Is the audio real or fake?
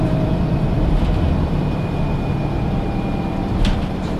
fake